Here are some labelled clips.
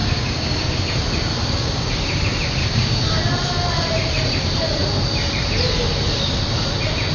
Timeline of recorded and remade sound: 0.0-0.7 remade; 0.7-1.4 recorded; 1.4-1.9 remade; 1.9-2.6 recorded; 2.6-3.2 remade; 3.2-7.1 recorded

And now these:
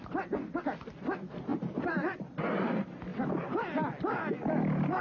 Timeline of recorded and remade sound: 0.0-1.5 recorded; 1.5-2.4 remade; 2.4-3.1 recorded; 3.1-3.9 remade; 3.9-5.0 recorded

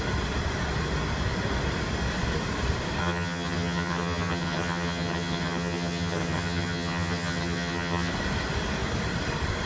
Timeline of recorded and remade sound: 0.0-3.0 recorded; 3.0-8.1 remade; 8.1-9.7 recorded